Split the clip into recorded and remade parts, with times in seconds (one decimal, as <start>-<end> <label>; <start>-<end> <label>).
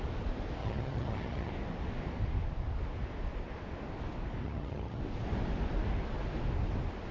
0.0-0.6 recorded; 0.6-1.5 remade; 1.5-4.4 recorded; 4.4-5.0 remade; 5.0-7.1 recorded